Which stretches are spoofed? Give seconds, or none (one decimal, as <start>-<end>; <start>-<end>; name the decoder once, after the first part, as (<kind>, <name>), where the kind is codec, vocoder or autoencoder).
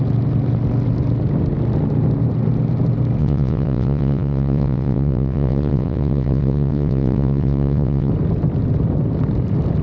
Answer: 3.2-8.1 (vocoder, WaveNeXt)